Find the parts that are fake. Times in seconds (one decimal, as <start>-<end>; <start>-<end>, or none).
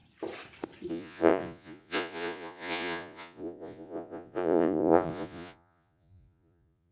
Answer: 0.9-6.9